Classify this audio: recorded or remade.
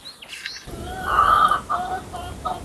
recorded